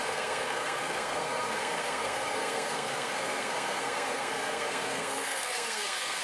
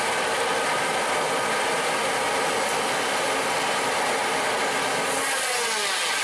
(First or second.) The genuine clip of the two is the second